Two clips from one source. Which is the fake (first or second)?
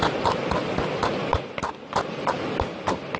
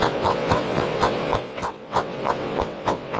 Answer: second